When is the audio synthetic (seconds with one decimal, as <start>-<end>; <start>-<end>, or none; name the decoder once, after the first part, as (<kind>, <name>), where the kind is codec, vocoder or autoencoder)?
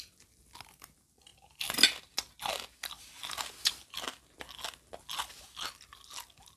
none